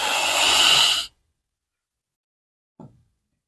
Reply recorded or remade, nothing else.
remade